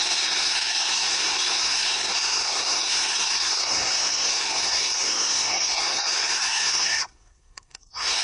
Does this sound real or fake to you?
fake